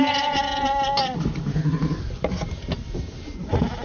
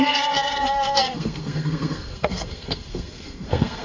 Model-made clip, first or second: second